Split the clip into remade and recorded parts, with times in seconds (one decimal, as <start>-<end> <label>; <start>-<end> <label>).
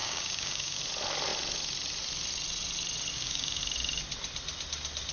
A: 0.0-0.8 remade; 0.8-3.1 recorded; 3.1-3.6 remade; 3.6-5.1 recorded